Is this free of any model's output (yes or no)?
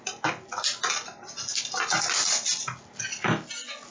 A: yes